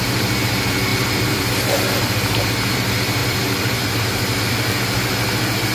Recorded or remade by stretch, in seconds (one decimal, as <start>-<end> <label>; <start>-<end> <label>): 0.0-0.9 recorded; 0.9-1.5 remade; 1.5-3.2 recorded; 3.2-4.0 remade; 4.0-5.7 recorded

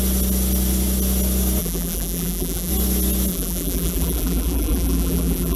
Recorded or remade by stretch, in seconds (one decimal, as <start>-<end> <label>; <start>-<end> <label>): 0.0-1.6 recorded; 1.6-2.7 remade; 2.7-3.3 recorded; 3.3-5.6 remade